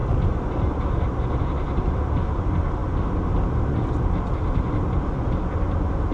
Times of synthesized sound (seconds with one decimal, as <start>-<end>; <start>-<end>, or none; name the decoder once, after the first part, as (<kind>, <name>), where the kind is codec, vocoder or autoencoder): none